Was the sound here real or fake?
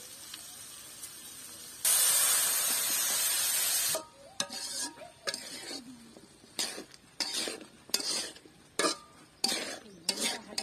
real